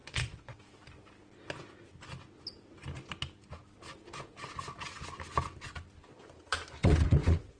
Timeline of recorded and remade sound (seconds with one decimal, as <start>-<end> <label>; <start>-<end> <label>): 0.0-0.6 remade; 0.6-6.8 recorded; 6.8-7.6 remade